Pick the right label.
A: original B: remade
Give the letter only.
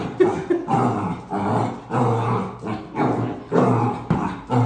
A